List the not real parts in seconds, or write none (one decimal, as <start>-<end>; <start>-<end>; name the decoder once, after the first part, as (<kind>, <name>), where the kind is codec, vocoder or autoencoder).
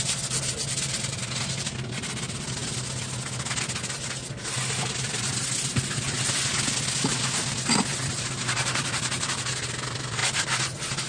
none